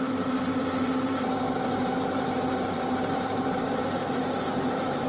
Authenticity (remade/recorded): remade